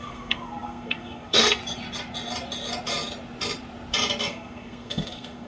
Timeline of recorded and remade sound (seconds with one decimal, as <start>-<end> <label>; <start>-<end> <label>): 0.0-1.6 remade; 1.6-4.2 recorded; 4.2-5.5 remade